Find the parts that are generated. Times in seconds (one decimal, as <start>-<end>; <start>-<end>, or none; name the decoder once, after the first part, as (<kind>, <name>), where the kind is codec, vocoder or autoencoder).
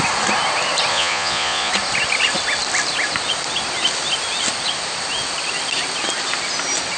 0.9-1.7 (vocoder, Vocos)